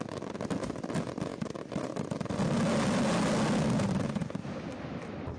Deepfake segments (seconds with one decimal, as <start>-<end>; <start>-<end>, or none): 1.3-1.8; 4.2-4.9